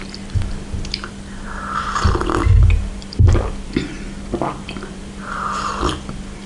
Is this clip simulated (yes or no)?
yes